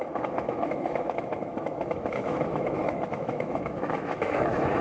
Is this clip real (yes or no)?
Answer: no